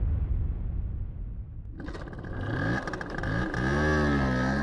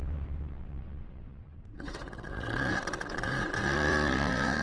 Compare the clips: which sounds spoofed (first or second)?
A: second